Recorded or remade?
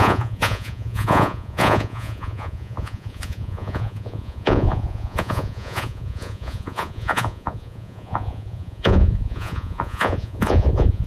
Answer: remade